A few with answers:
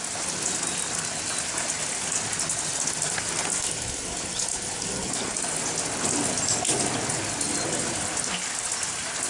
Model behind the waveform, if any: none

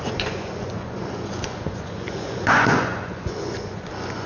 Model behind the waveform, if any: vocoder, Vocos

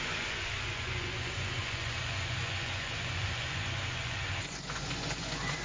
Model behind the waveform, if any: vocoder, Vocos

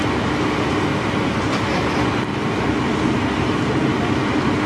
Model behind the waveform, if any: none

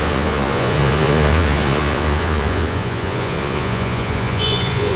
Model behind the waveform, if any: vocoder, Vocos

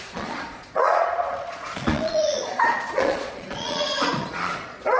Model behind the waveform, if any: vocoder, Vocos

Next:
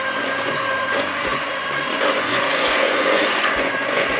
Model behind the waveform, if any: vocoder, Vocos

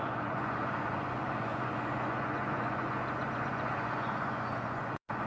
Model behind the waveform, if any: vocoder, Vocos